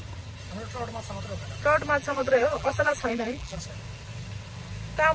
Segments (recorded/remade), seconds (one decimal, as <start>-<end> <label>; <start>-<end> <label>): 0.0-2.0 recorded; 2.0-3.6 remade; 3.6-5.1 recorded